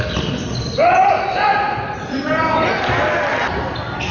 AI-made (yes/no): no